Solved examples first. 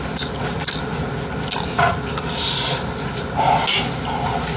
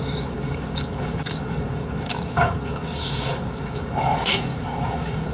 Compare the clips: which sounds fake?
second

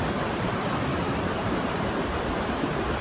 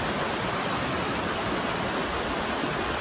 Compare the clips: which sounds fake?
first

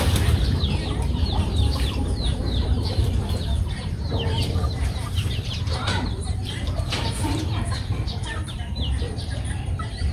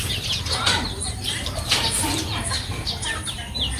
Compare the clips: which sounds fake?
first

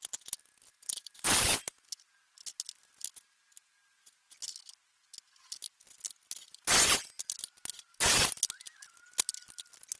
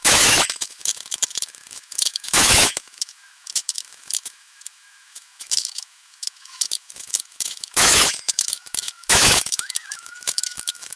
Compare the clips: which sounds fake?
second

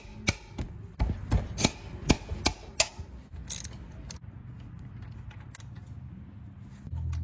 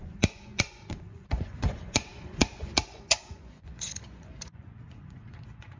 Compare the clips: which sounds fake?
second